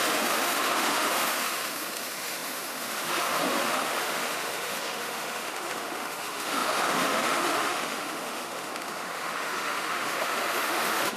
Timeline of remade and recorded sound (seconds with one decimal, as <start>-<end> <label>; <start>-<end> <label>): 0.0-11.2 remade